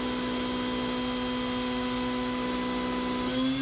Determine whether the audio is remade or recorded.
recorded